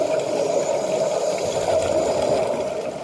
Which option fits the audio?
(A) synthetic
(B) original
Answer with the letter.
B